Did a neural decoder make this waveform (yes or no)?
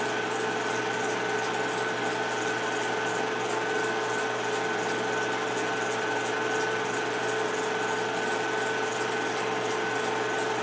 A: no